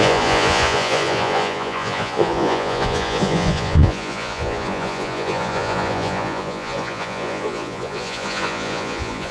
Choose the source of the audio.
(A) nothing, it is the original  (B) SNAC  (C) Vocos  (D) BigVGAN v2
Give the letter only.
C